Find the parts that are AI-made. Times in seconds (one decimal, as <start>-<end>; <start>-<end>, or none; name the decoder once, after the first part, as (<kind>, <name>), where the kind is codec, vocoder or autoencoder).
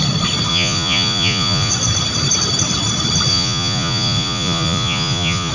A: 0.5-1.7 (vocoder, Vocos); 3.3-5.5